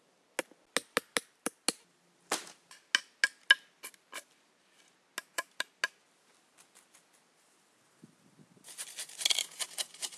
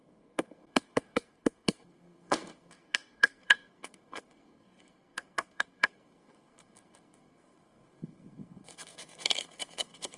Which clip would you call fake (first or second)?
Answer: second